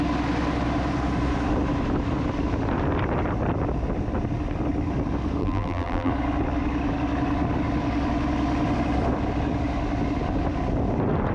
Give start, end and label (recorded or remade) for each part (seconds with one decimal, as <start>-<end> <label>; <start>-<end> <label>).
0.0-5.4 recorded; 5.4-6.1 remade; 6.1-11.3 recorded